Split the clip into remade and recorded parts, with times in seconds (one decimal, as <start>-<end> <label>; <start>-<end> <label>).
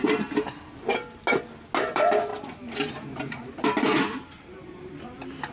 0.0-0.9 remade; 0.9-1.9 recorded; 1.9-2.3 remade; 2.3-2.9 recorded; 2.9-5.5 remade